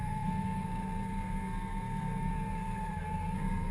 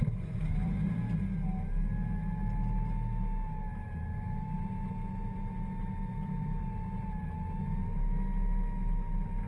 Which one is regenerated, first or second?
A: first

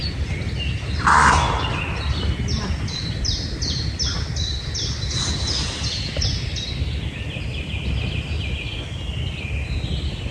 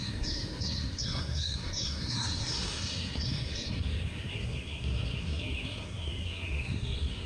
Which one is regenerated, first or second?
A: second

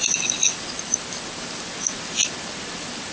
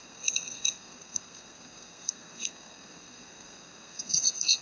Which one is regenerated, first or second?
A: second